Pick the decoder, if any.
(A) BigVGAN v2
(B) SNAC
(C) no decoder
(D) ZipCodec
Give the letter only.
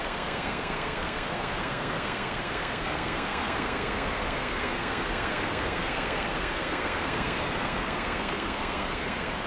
B